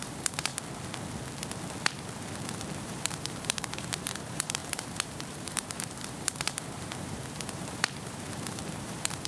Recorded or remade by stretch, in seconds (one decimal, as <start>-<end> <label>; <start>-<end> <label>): 0.0-0.5 remade; 0.5-2.8 recorded; 2.8-9.3 remade